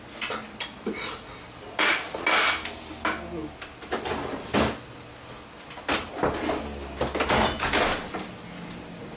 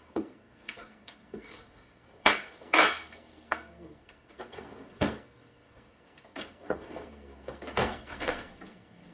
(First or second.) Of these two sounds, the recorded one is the first